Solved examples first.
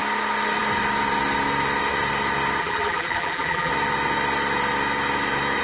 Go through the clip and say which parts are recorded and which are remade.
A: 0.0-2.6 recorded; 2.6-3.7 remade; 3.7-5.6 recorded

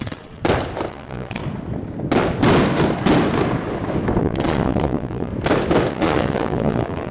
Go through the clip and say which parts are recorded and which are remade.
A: 0.0-0.4 remade; 0.4-0.9 recorded; 0.9-1.4 remade; 1.4-4.2 recorded; 4.2-5.3 remade; 5.3-5.9 recorded; 5.9-7.1 remade